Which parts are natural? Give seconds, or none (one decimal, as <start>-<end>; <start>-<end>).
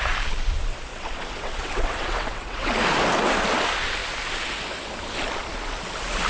0.0-0.9; 2.7-6.3